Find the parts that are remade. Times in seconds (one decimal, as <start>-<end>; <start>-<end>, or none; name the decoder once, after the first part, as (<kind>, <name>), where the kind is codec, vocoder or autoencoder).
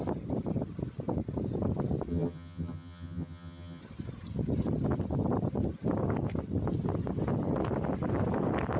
2.1-3.8 (vocoder, HiFi-GAN)